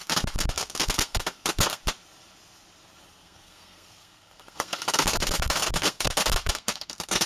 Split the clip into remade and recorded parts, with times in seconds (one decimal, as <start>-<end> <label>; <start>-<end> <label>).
0.0-1.8 remade; 1.8-3.2 recorded; 3.2-7.3 remade